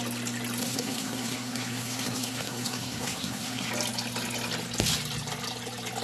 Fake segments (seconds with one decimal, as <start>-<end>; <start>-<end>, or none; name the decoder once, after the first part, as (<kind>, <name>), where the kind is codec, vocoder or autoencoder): 0.6-3.7 (codec, SNAC)